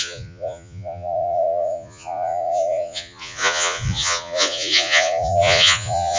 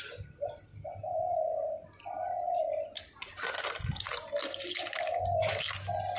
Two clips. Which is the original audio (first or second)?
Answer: second